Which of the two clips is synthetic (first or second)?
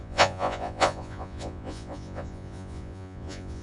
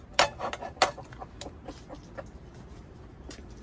first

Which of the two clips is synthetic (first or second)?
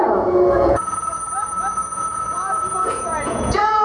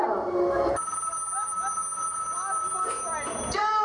first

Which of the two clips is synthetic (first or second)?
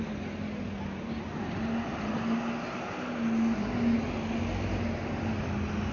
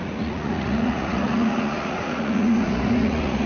second